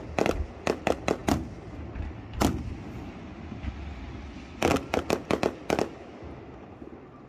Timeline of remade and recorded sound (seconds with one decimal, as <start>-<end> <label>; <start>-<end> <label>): 0.0-7.3 recorded